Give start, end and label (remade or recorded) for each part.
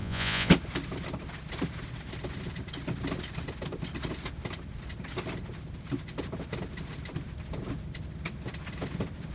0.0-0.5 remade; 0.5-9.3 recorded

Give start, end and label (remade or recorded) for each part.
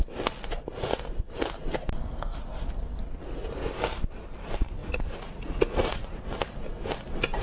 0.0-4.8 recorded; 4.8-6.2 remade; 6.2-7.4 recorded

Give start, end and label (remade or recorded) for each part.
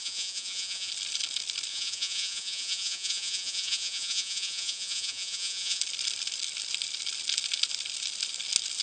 0.0-0.9 remade; 0.9-1.7 recorded; 1.7-5.8 remade; 5.8-8.8 recorded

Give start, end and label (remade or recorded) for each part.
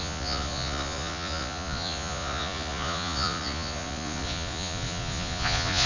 0.0-5.9 remade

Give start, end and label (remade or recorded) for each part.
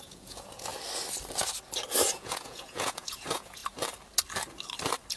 0.0-0.7 remade; 0.7-2.1 recorded; 2.1-3.6 remade; 3.6-5.2 recorded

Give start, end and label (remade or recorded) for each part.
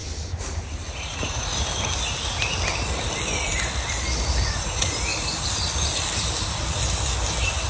0.0-0.9 recorded; 0.9-1.7 remade; 1.7-4.4 recorded; 4.4-5.1 remade; 5.1-7.7 recorded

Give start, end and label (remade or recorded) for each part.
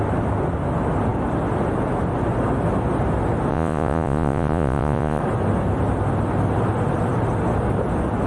0.0-3.5 recorded; 3.5-5.2 remade; 5.2-8.3 recorded